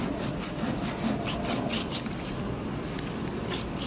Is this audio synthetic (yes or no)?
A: no